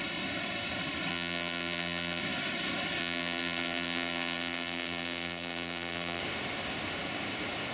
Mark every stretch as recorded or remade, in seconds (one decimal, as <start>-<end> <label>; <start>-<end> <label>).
0.0-1.1 recorded; 1.1-2.2 remade; 2.2-3.0 recorded; 3.0-6.2 remade; 6.2-7.7 recorded

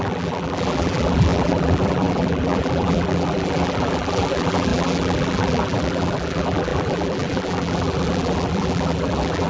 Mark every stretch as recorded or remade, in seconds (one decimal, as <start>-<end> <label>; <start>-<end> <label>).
0.0-9.5 remade

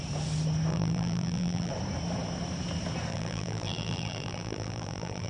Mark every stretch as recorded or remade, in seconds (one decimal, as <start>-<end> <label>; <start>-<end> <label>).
0.0-0.7 recorded; 0.7-1.7 remade; 1.7-3.1 recorded; 3.1-5.3 remade